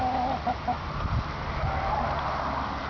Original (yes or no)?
yes